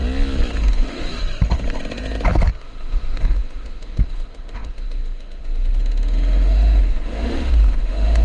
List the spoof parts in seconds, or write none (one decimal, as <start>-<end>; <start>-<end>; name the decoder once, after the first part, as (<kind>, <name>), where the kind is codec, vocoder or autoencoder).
0.6-1.1 (autoencoder, DAC-VAE); 2.6-8.2